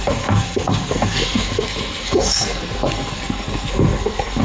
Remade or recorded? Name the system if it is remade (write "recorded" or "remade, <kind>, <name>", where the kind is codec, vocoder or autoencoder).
remade, codec, SNAC